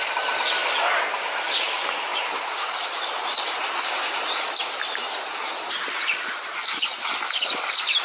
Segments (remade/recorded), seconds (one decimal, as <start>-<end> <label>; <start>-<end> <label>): 0.0-8.0 remade